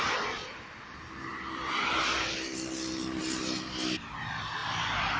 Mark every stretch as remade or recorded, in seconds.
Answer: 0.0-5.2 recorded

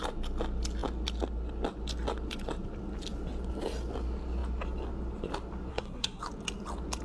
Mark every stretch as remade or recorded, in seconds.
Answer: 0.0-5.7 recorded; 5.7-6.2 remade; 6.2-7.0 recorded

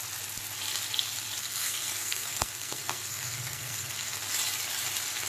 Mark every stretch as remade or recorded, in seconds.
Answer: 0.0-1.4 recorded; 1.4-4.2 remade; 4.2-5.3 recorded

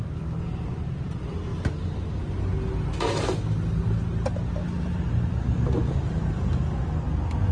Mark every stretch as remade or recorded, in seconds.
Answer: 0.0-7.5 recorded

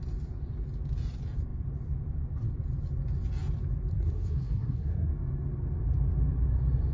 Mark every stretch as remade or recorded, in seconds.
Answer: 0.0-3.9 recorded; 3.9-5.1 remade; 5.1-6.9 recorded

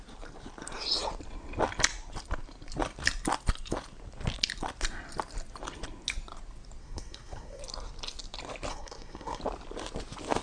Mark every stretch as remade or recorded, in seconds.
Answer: 0.0-6.8 recorded; 6.8-7.6 remade; 7.6-8.7 recorded; 8.7-9.4 remade; 9.4-10.4 recorded

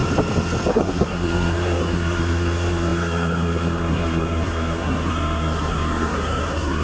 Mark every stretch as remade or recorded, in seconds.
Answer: 0.0-0.7 recorded; 0.7-6.8 remade